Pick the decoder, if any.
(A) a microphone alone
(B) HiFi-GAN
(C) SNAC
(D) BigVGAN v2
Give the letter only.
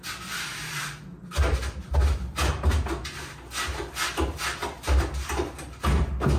A